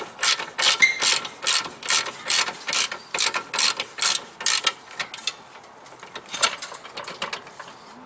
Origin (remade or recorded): recorded